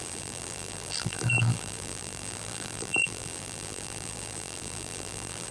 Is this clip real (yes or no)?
no